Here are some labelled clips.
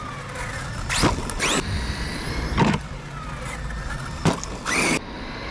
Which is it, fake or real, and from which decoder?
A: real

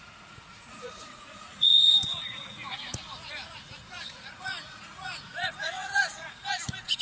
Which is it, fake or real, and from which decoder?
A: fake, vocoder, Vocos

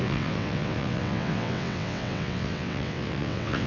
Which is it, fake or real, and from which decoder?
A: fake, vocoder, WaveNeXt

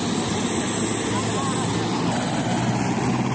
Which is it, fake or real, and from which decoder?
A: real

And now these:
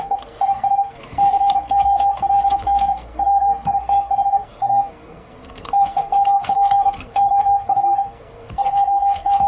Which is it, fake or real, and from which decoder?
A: fake, codec, SNAC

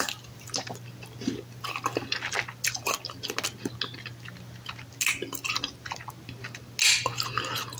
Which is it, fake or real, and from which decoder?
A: real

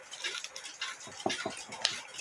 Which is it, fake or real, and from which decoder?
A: real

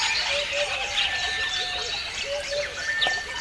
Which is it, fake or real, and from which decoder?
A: real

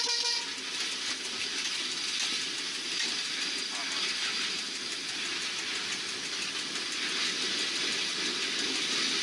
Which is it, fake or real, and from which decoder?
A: real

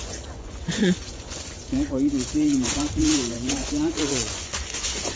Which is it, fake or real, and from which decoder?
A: fake, vocoder, Vocos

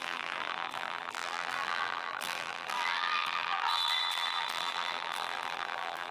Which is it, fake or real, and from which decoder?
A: fake, vocoder, BigVGAN v2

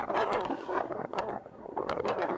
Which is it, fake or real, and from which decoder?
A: fake, codec, SNAC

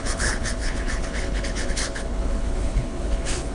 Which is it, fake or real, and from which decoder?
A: fake, codec, HILCodec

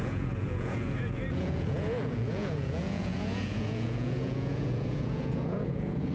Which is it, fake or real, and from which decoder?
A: fake, vocoder, Vocos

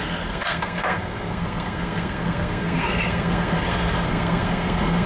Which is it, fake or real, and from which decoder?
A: fake, codec, SNAC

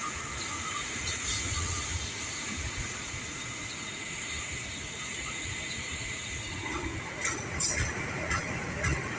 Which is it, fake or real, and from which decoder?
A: fake, vocoder, Vocos